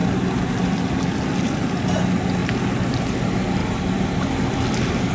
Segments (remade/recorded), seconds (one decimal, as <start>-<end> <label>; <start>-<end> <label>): 0.0-3.6 recorded; 3.6-4.3 remade; 4.3-5.1 recorded

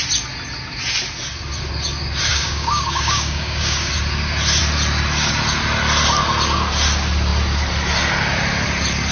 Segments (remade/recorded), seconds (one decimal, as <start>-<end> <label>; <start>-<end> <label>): 0.0-2.3 recorded; 2.3-3.9 remade; 3.9-9.1 recorded

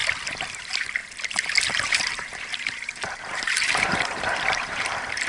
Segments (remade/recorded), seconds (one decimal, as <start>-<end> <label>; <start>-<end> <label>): 0.0-0.5 recorded; 0.5-5.3 remade

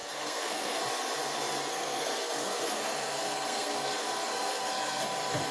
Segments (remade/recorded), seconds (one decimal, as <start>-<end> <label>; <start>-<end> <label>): 0.0-0.8 remade; 0.8-1.7 recorded; 1.7-5.0 remade; 5.0-5.5 recorded